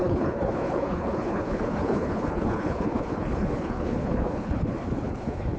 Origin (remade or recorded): remade